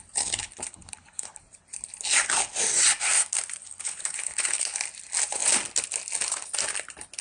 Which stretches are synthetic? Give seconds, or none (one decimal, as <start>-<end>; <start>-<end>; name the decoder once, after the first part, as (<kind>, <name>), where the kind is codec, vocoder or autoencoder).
0.7-1.4 (codec, HILCodec); 3.6-4.8